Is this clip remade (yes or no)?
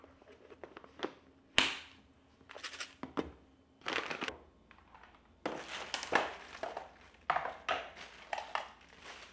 no